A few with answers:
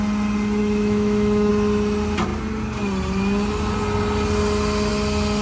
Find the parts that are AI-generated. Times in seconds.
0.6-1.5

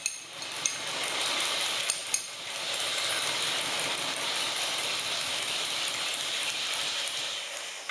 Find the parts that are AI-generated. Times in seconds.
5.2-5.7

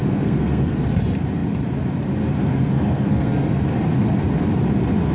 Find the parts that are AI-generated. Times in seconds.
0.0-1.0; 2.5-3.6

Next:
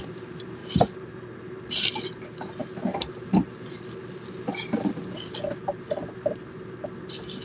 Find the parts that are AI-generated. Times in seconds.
none